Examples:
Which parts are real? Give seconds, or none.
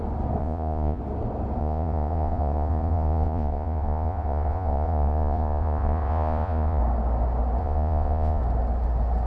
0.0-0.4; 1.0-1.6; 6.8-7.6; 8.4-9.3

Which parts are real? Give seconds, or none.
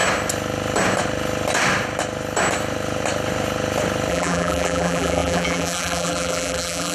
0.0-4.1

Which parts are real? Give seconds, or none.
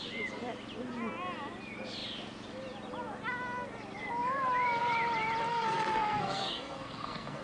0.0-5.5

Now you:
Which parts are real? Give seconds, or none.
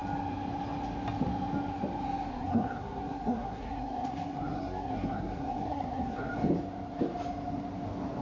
0.0-2.3; 6.3-8.2